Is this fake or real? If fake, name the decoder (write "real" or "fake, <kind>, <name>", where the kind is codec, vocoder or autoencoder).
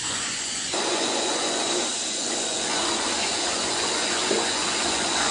fake, vocoder, Vocos